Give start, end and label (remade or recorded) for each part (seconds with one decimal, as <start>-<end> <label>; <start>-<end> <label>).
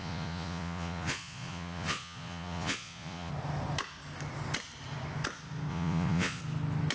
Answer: 0.0-3.3 remade; 3.3-5.7 recorded; 5.7-6.4 remade; 6.4-6.9 recorded